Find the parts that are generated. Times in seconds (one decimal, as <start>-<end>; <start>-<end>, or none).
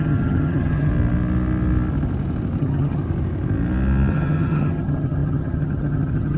0.0-0.9; 2.6-3.0; 4.1-6.4